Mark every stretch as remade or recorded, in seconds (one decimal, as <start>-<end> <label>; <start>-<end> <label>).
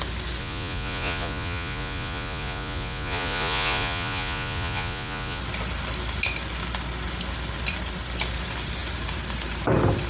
0.0-0.4 recorded; 0.4-5.4 remade; 5.4-10.1 recorded